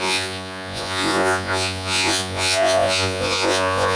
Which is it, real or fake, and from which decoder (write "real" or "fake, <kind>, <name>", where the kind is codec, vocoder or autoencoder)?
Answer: fake, vocoder, Vocos